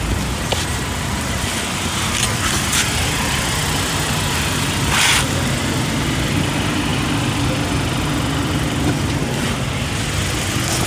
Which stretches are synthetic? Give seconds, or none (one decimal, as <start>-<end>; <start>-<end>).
none